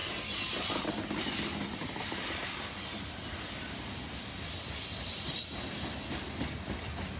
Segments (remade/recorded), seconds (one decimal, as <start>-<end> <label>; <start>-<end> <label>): 0.0-7.2 recorded